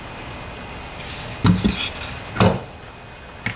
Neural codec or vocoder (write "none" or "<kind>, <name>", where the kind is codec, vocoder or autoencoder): none